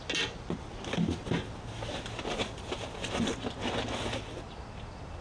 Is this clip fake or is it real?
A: real